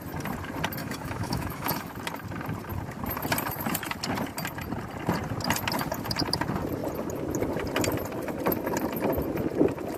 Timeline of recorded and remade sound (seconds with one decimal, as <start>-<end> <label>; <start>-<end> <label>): 0.0-0.8 recorded; 0.8-1.9 remade; 1.9-10.0 recorded